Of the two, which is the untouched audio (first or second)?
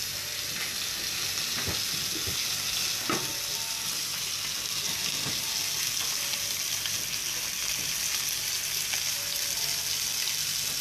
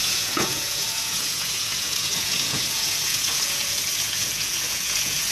first